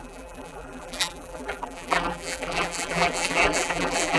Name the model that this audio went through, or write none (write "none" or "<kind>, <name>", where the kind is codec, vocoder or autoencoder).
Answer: vocoder, BigVGAN v2